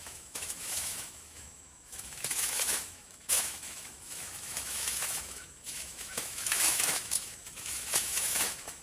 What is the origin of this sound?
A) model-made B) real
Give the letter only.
A